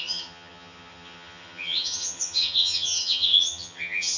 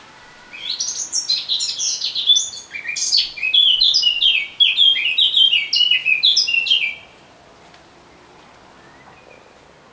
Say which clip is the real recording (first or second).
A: second